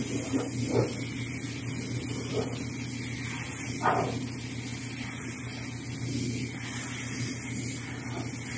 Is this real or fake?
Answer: real